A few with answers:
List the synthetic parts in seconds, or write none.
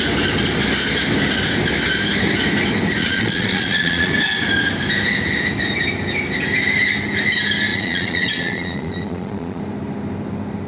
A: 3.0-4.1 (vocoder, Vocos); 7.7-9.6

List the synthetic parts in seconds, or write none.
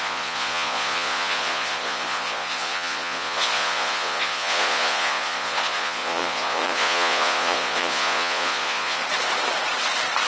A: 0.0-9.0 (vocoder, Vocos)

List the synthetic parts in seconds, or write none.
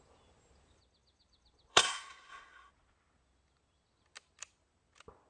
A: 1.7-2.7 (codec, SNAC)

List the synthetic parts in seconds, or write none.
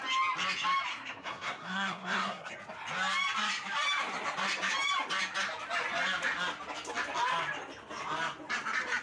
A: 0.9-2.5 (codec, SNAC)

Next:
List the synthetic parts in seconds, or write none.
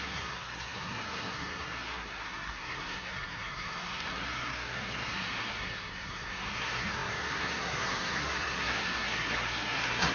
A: 0.0-10.1 (codec, SNAC)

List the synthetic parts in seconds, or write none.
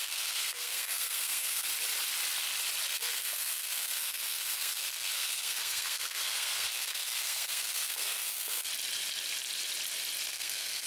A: 0.0-1.7 (codec, SNAC); 2.9-8.7; 10.3-10.9